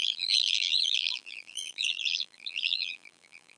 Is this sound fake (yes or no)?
yes